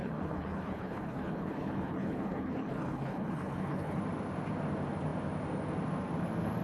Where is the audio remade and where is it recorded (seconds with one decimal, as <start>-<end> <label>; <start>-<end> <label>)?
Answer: 0.0-4.0 remade; 4.0-6.6 recorded